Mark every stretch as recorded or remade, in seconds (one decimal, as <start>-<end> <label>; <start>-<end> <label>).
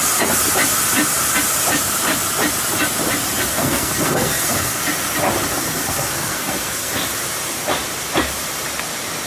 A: 0.0-3.5 recorded; 3.5-4.8 remade; 4.8-5.6 recorded; 5.6-6.9 remade; 6.9-9.3 recorded